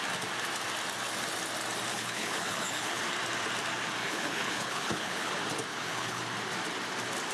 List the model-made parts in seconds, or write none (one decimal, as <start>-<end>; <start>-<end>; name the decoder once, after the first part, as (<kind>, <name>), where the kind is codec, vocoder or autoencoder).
1.9-3.0 (codec, HILCodec); 4.0-5.3; 5.7-6.2